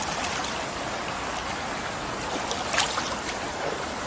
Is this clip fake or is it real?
real